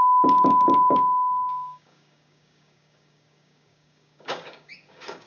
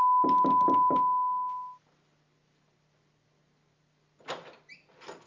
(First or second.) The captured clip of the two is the second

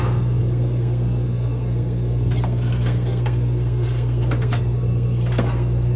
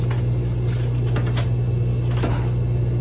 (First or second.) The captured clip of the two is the second